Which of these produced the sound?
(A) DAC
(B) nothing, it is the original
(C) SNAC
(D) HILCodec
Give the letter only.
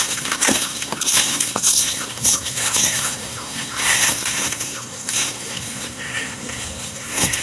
C